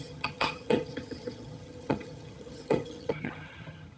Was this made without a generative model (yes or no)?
no